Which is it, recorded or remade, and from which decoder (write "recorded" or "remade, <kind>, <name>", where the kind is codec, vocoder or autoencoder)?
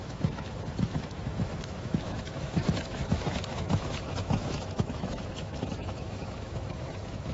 remade, autoencoder, DAC-VAE